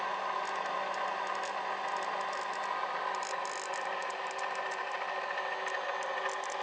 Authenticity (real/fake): real